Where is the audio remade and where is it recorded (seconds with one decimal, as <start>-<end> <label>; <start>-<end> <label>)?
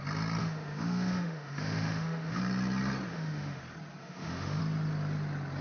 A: 0.0-0.4 recorded; 0.4-2.4 remade; 2.4-3.1 recorded; 3.1-3.6 remade; 3.6-4.0 recorded; 4.0-4.6 remade; 4.6-5.6 recorded